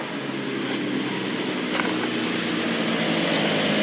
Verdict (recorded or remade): recorded